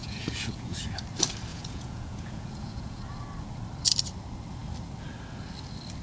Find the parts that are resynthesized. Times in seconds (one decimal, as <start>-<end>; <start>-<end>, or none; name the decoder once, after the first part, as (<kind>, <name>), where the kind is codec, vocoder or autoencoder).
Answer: 0.0-0.8 (vocoder, Vocos); 1.5-3.0